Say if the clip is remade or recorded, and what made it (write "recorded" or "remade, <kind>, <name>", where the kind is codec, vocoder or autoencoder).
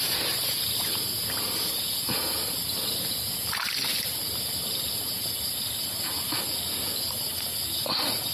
recorded